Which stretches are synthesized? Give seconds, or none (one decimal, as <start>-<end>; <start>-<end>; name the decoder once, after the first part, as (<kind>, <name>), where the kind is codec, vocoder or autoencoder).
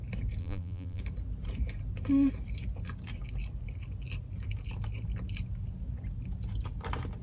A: 0.4-1.0 (vocoder, BigVGAN v2)